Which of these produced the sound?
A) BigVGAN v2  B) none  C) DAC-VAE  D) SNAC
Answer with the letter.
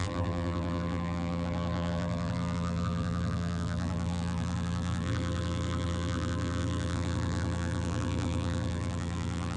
A